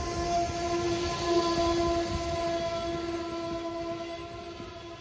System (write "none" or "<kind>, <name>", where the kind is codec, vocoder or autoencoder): none